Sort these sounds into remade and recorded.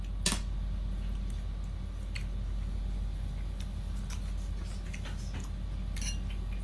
recorded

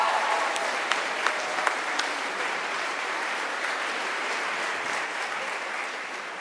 remade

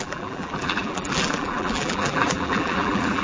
remade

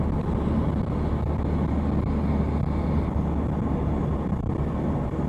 recorded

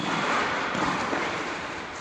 remade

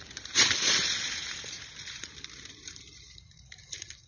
remade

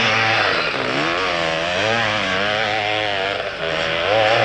remade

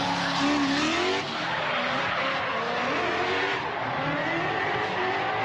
recorded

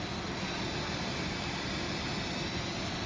recorded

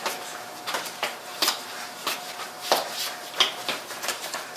remade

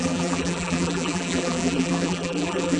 remade